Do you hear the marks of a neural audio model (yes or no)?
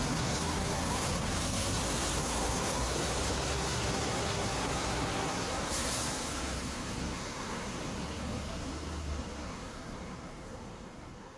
yes